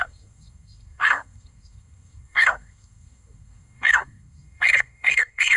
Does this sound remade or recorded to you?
remade